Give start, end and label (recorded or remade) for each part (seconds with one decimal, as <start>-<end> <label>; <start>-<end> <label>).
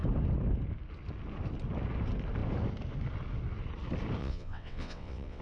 0.0-4.2 recorded; 4.2-5.4 remade